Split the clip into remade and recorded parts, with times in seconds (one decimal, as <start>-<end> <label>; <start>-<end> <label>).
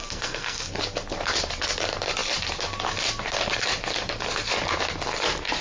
0.0-0.8 remade; 0.8-5.6 recorded